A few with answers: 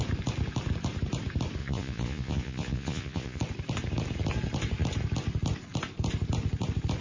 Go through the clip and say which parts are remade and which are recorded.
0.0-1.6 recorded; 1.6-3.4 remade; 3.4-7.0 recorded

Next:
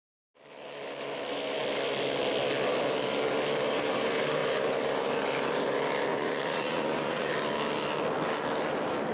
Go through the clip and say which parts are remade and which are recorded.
0.0-6.1 recorded; 6.1-7.3 remade; 7.3-9.1 recorded

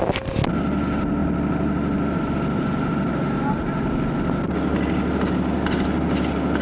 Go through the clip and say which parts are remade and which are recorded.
0.0-6.6 recorded

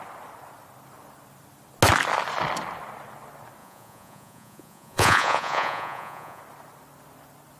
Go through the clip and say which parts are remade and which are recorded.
0.0-3.6 recorded; 3.6-6.4 remade; 6.4-7.6 recorded

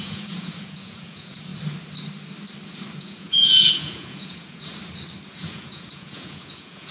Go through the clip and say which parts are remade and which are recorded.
0.0-1.5 remade; 1.5-3.0 recorded; 3.0-4.7 remade; 4.7-5.3 recorded; 5.3-6.9 remade